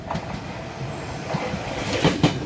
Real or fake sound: real